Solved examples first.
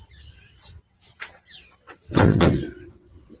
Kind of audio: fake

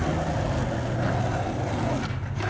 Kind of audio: real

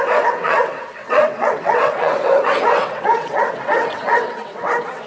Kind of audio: fake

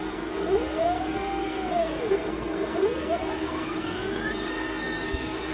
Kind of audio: fake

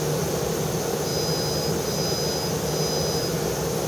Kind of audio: real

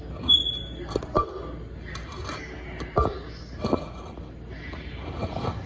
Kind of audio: real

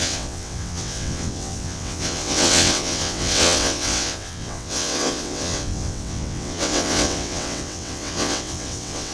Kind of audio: fake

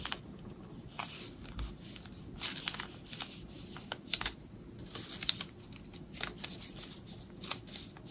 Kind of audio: real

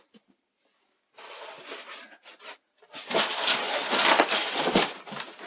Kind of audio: fake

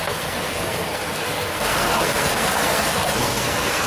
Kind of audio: fake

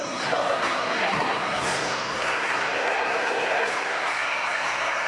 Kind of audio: fake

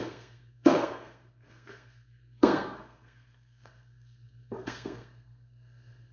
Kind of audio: fake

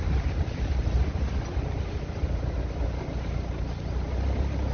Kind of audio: real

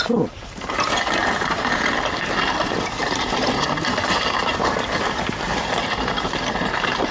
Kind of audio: fake